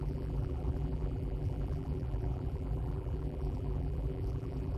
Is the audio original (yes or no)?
no